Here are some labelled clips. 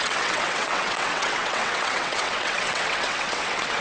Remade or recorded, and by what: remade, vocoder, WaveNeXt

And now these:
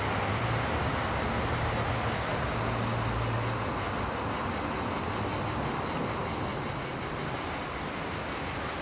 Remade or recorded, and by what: recorded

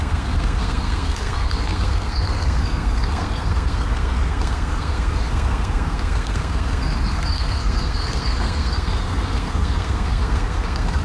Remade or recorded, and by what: remade, codec, SNAC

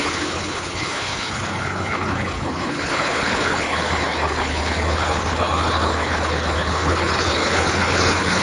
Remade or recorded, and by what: remade, codec, HILCodec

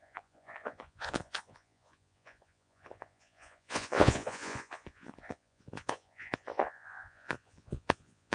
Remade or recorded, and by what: remade, vocoder, Vocos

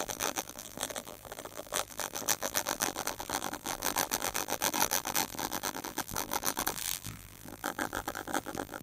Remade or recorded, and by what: remade, vocoder, BigVGAN v2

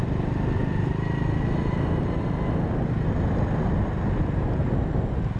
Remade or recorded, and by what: recorded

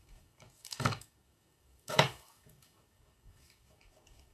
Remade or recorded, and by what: remade, codec, DAC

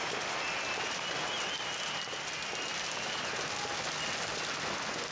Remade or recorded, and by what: recorded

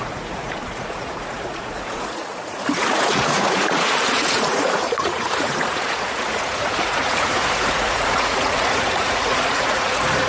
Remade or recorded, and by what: remade, vocoder, Vocos